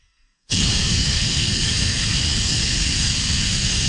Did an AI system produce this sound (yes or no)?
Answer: yes